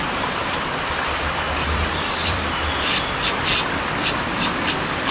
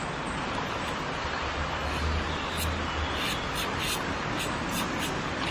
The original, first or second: second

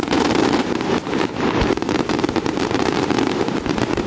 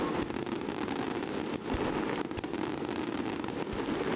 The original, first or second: second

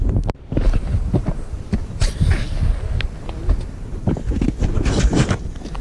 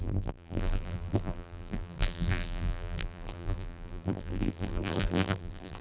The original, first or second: first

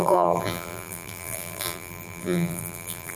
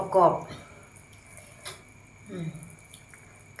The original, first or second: second